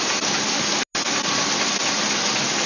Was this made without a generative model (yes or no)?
yes